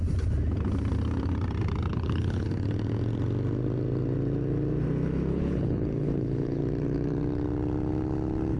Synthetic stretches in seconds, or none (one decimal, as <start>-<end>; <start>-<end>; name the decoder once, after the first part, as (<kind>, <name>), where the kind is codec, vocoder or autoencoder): 1.9-2.5 (codec, HILCodec); 5.3-6.6